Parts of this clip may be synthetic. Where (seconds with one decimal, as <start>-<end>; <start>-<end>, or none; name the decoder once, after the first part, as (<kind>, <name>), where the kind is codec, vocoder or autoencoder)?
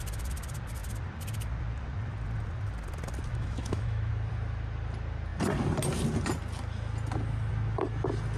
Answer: 3.3-4.1 (autoencoder, DAC-VAE)